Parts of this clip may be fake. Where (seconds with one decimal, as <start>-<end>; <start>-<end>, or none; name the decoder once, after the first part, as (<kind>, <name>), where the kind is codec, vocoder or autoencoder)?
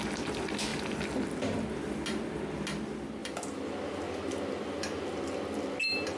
none